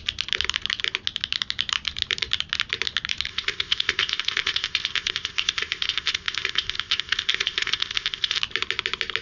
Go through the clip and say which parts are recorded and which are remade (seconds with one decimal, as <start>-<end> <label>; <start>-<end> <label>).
0.0-3.3 recorded; 3.3-8.4 remade; 8.4-9.2 recorded